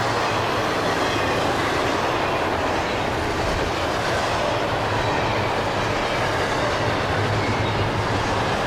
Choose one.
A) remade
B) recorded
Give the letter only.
B